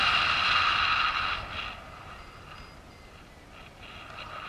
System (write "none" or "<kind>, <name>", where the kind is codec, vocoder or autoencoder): none